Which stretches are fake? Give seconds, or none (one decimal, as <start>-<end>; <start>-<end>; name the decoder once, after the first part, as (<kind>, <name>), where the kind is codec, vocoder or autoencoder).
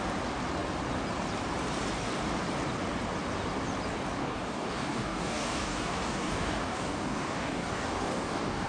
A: 4.2-8.7 (codec, DAC)